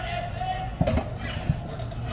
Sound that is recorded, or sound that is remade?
recorded